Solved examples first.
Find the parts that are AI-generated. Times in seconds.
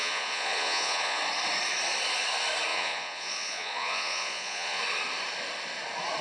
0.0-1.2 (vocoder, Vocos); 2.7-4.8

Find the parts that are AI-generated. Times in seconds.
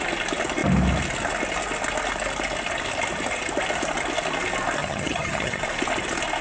4.8-5.6 (vocoder, HiFi-GAN)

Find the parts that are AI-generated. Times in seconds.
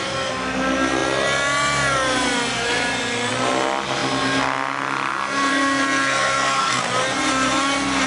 5.5-6.8 (codec, SNAC)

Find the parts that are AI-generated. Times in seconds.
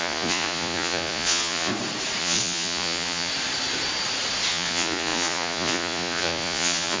0.0-1.7 (vocoder, Vocos); 2.2-3.3; 4.5-7.0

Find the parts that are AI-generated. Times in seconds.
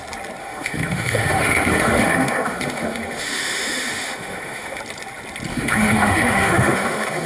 0.4-4.8 (autoencoder, DAC-VAE); 5.5-7.3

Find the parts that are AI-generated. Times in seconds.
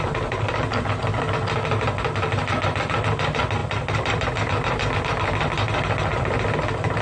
none